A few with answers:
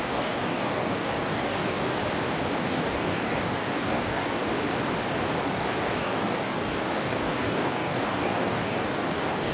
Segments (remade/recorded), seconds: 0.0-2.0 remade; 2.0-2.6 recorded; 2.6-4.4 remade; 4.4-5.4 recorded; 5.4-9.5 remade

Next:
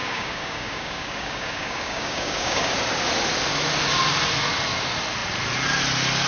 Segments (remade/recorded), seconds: 0.0-2.7 remade; 2.7-6.3 recorded

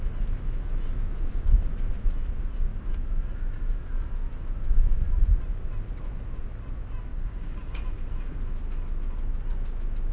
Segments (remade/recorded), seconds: 0.0-7.1 recorded; 7.1-7.8 remade; 7.8-10.1 recorded

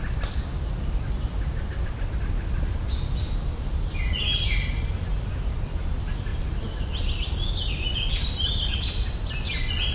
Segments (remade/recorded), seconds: 0.0-9.9 recorded